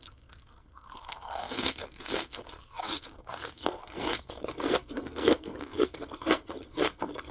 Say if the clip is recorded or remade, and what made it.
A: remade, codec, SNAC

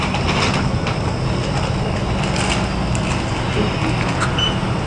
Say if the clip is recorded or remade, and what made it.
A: recorded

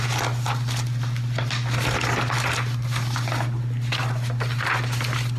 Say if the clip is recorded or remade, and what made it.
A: recorded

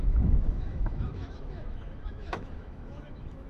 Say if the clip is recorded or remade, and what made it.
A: remade, autoencoder, DAC-VAE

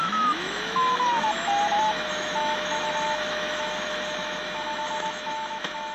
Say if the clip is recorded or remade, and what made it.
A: remade, autoencoder, DAC-VAE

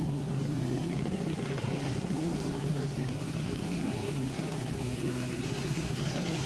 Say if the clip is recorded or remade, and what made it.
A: remade, codec, SNAC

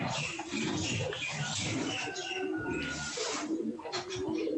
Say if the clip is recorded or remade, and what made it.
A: remade, vocoder, BigVGAN v2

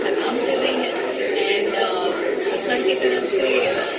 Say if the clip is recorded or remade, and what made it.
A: remade, codec, DAC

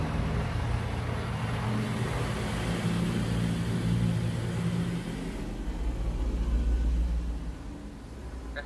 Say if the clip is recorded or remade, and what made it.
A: recorded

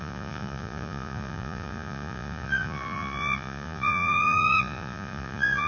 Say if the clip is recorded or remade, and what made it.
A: remade, vocoder, Vocos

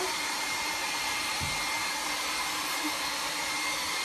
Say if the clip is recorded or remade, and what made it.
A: remade, vocoder, BigVGAN v2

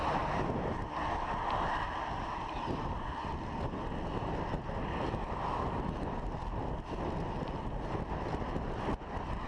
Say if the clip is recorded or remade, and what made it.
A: recorded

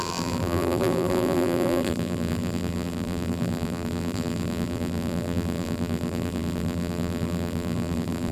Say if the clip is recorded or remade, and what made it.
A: remade, vocoder, BigVGAN v2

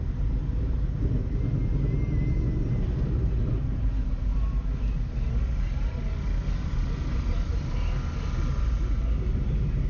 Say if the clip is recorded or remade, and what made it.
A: recorded